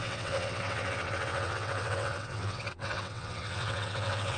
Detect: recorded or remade remade